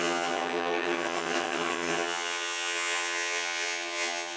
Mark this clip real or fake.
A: fake